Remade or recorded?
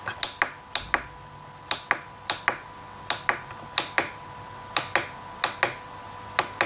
recorded